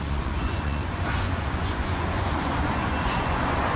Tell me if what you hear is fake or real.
fake